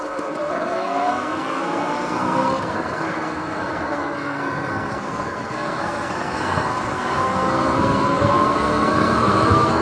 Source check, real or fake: fake